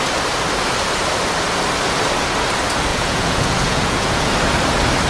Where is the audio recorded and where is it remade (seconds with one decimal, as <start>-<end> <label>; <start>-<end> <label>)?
0.0-2.9 recorded; 2.9-4.3 remade; 4.3-5.1 recorded